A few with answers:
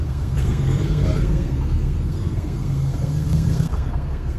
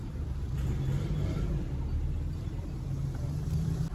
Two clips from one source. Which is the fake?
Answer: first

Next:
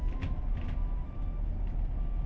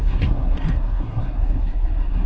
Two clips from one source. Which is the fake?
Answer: second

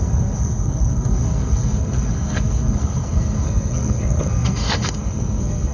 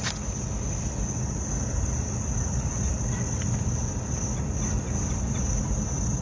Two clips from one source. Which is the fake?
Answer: first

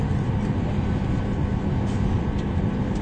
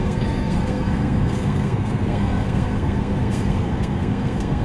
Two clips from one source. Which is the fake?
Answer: second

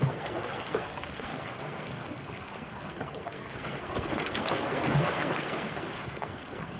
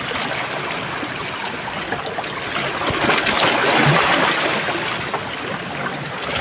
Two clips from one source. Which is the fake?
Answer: first